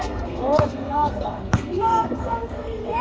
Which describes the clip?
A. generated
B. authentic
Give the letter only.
A